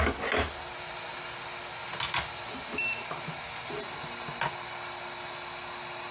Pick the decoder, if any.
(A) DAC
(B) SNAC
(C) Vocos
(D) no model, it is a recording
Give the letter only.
D